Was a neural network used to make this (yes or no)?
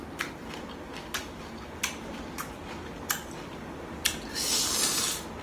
no